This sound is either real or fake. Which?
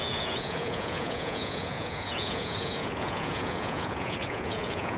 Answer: fake